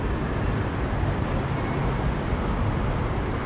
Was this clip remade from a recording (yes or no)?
no